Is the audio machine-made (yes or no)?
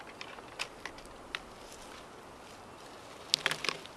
no